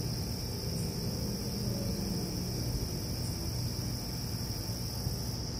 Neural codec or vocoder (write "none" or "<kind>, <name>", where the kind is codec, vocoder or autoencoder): none